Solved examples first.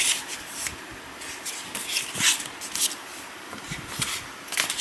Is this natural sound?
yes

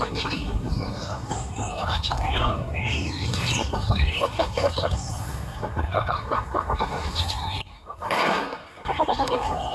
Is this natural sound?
no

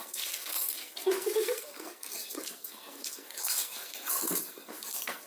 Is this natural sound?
no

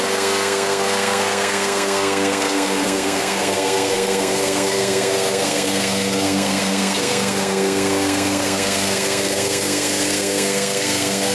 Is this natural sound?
no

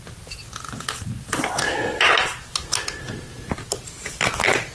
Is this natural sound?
yes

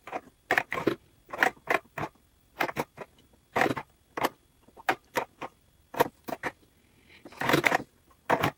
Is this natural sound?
yes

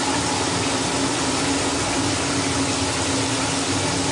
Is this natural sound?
yes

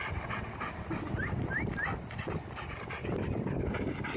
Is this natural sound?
yes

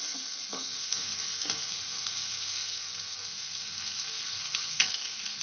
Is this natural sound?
no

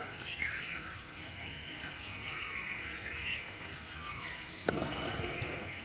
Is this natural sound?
no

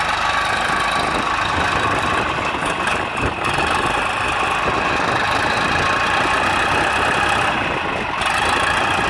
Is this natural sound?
yes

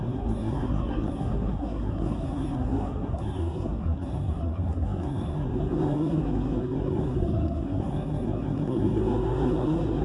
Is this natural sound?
no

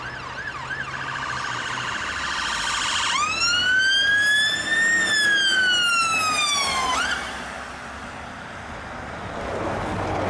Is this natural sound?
yes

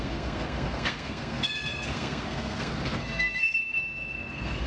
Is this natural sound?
no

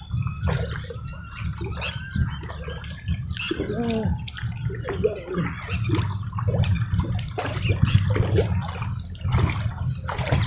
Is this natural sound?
yes